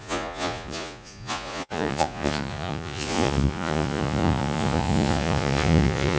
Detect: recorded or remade remade